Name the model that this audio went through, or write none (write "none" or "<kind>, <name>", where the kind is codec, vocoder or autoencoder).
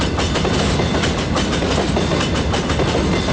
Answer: none